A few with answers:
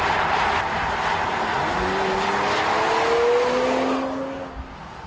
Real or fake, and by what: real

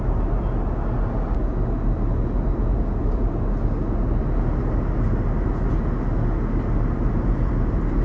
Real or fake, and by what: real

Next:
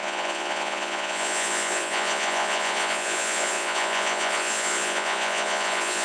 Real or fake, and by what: fake, vocoder, Vocos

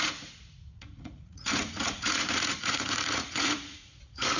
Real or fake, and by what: fake, vocoder, Vocos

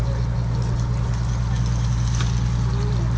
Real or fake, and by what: real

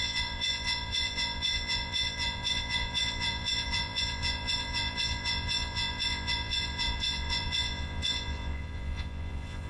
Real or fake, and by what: fake, vocoder, Vocos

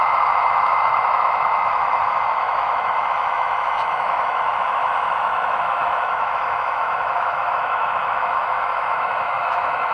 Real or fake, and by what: fake, autoencoder, DAC-VAE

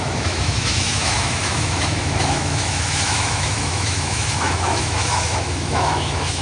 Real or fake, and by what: fake, autoencoder, DAC-VAE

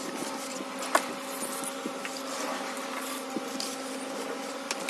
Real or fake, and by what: real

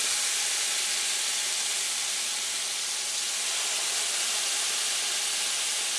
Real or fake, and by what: real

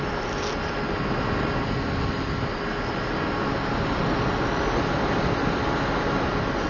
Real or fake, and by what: real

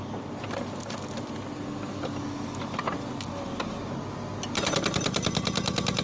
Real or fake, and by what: real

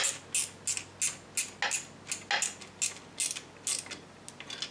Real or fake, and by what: real